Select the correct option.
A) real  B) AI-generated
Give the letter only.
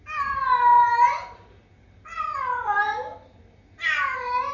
A